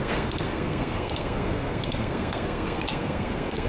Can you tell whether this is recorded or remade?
remade